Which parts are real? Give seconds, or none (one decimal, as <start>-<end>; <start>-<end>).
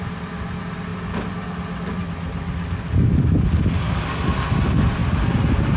0.0-5.8